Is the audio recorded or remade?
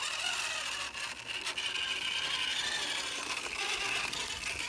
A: recorded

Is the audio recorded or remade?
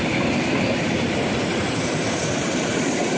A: remade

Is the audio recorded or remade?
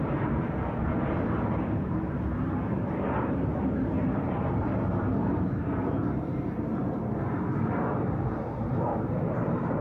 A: remade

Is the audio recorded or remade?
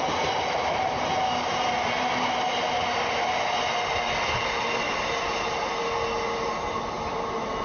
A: recorded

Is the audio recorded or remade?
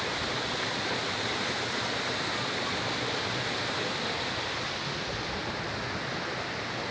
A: recorded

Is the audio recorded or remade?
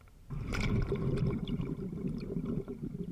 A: remade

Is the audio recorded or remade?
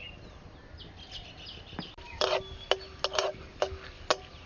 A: recorded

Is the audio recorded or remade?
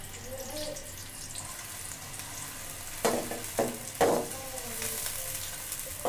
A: recorded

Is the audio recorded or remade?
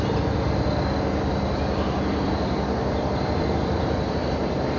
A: remade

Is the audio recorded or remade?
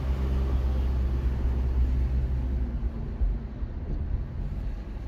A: recorded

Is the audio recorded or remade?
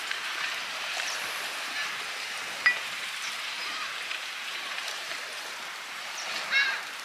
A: remade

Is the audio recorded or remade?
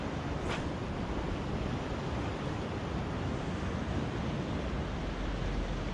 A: recorded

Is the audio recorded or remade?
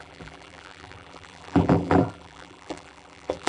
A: remade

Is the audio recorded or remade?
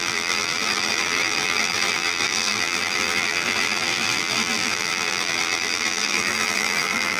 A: remade